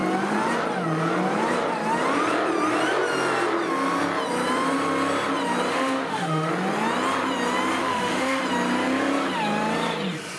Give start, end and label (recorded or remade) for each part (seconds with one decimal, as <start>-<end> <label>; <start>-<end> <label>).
0.0-5.7 recorded; 5.7-6.5 remade; 6.5-7.8 recorded; 7.8-8.4 remade; 8.4-10.4 recorded